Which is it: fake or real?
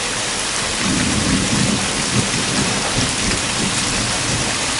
fake